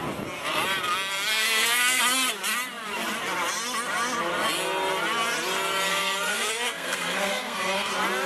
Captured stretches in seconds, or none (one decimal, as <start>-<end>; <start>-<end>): 0.0-1.3; 2.0-5.9; 7.9-8.3